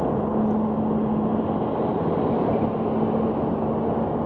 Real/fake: real